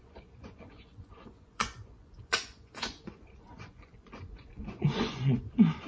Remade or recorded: remade